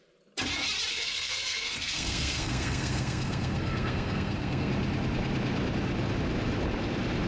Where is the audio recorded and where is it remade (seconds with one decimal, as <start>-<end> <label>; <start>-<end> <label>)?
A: 0.0-0.9 recorded; 0.9-4.7 remade; 4.7-7.3 recorded